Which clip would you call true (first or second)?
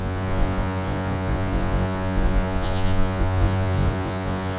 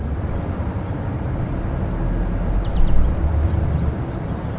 second